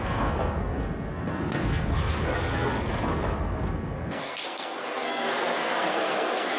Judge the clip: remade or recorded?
remade